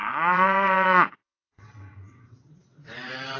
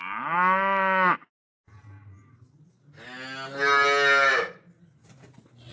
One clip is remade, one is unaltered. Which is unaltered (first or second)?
second